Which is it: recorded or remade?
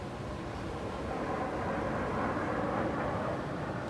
recorded